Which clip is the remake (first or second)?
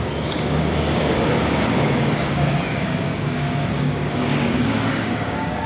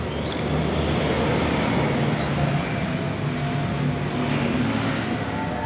first